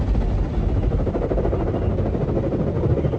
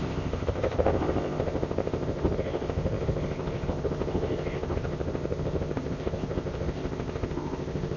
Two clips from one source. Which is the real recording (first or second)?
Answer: first